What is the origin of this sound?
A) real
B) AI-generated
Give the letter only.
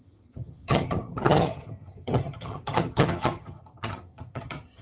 B